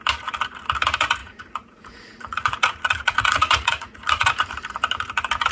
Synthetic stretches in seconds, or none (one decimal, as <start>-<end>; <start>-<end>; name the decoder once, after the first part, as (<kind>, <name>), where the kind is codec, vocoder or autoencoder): 1.2-4.5 (vocoder, Vocos)